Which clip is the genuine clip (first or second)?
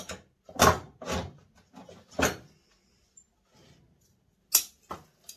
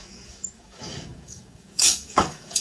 first